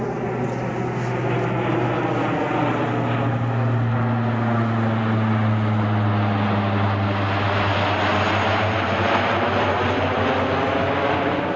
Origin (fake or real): real